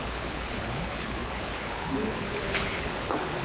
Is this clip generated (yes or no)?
yes